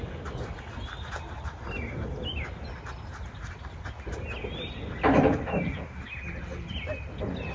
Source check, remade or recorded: recorded